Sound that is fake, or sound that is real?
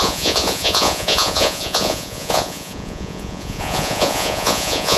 fake